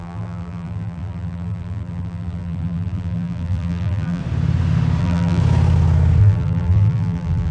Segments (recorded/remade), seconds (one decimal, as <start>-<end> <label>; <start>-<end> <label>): 0.0-4.2 remade; 4.2-5.0 recorded; 5.0-5.4 remade; 5.4-6.2 recorded; 6.2-7.5 remade